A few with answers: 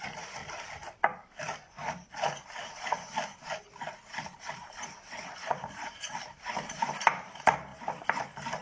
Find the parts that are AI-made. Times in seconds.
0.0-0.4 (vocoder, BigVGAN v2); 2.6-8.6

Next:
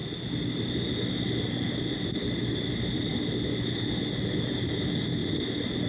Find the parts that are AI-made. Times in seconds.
none

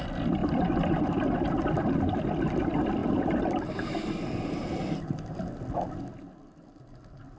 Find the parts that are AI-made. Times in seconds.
none

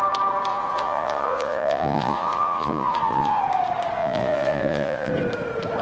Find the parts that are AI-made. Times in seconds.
0.5-3.4 (vocoder, Vocos); 4.0-5.1

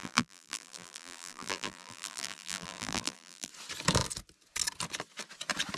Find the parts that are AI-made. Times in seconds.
0.0-3.5 (vocoder, BigVGAN v2)

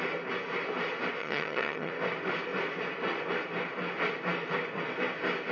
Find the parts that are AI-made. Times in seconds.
1.2-1.9 (vocoder, HiFi-GAN)

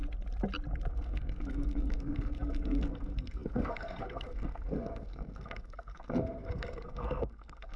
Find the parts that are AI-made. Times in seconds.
0.9-7.8 (codec, SNAC)

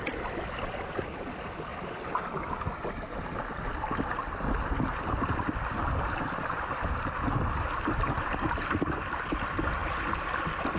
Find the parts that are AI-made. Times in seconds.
none